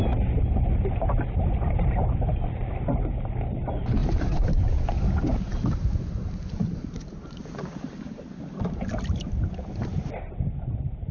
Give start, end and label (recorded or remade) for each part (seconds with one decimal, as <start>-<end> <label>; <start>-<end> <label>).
0.0-4.0 recorded; 4.0-4.8 remade; 4.8-5.5 recorded; 5.5-10.0 remade; 10.0-11.1 recorded